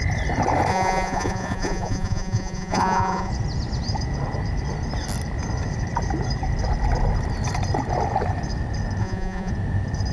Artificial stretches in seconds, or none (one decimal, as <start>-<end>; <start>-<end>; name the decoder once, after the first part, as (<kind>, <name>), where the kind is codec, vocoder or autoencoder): 0.7-3.3 (vocoder, Vocos); 9.0-9.5